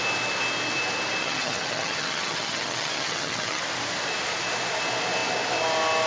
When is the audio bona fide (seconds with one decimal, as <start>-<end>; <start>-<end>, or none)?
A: 0.0-1.2; 3.6-6.1